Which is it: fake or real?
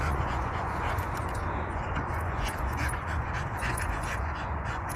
fake